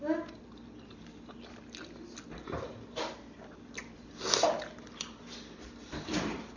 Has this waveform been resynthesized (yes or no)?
no